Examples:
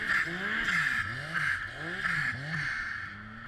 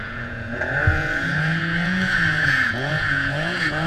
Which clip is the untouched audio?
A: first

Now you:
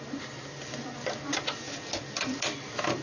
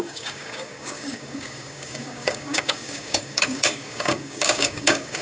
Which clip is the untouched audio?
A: first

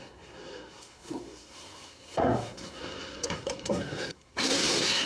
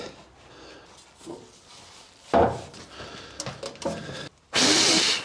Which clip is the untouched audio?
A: second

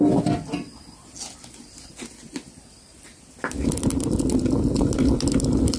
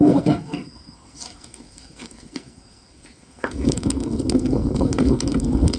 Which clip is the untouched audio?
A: first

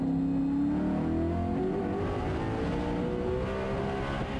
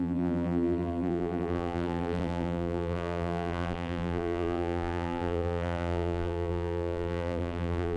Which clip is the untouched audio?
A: first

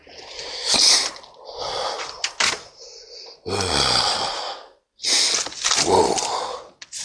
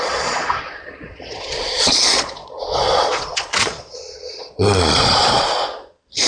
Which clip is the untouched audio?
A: first